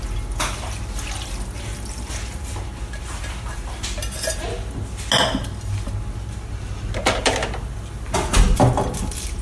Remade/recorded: recorded